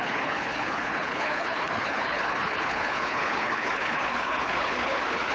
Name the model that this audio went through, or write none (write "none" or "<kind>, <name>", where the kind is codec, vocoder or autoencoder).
codec, HILCodec